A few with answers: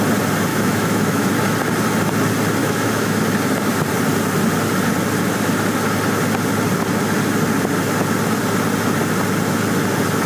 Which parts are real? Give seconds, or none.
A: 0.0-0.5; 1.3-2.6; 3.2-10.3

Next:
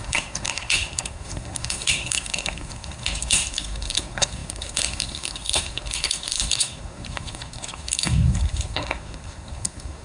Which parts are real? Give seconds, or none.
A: none

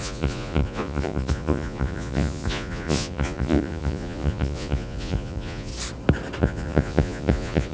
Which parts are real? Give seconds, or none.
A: 5.7-6.4

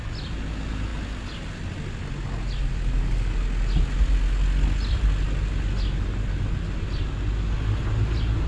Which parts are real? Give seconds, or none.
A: 0.0-8.5

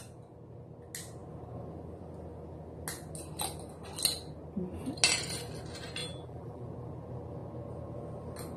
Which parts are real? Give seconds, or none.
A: 0.0-6.0; 6.6-8.6

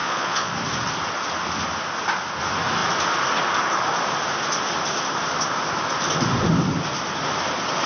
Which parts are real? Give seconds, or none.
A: 0.5-7.9

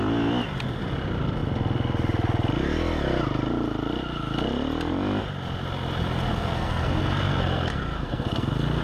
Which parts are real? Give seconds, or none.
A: 0.0-6.3

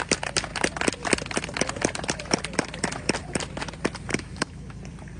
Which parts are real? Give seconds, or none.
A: 0.0-4.1; 4.8-5.2